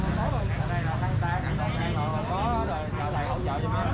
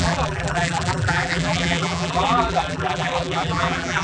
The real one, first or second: first